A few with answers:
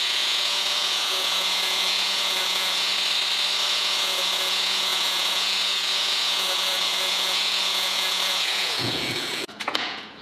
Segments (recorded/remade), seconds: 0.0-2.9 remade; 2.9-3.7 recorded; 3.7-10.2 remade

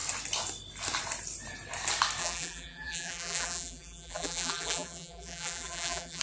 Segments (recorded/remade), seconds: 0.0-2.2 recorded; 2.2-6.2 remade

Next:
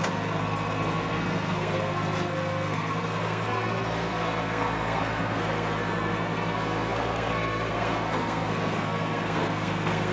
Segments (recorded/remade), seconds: 0.0-10.1 remade

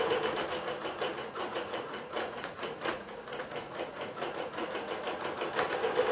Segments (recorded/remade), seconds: 0.0-1.2 recorded; 1.2-4.9 remade; 4.9-6.1 recorded

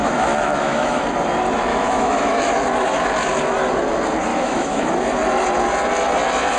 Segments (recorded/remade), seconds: 0.0-1.0 remade; 1.0-1.7 recorded; 1.7-2.5 remade; 2.5-4.3 recorded; 4.3-4.9 remade; 4.9-6.6 recorded